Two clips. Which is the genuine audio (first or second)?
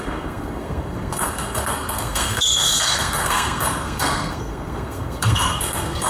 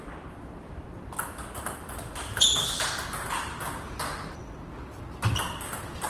second